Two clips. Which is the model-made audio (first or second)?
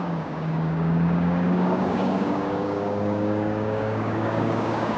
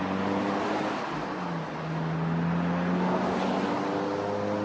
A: first